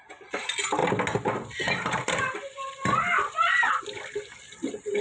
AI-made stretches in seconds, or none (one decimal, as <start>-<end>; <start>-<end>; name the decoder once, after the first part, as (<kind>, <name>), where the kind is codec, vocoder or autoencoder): none